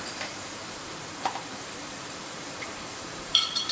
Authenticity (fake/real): fake